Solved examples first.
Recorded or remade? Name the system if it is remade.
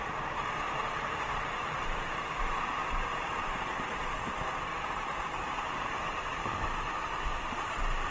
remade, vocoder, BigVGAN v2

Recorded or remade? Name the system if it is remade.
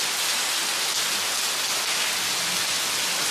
recorded